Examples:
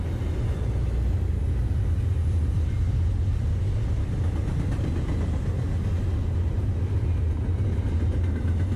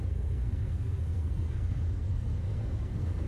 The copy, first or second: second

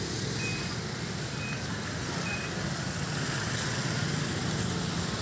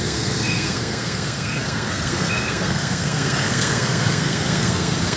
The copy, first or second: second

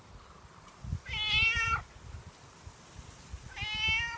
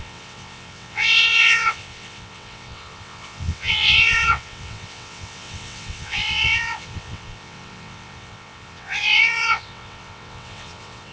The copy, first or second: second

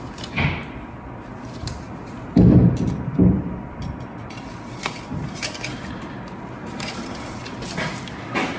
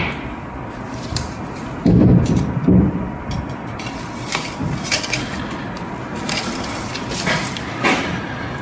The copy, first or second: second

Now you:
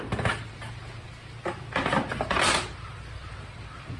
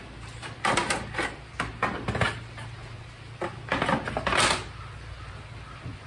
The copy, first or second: first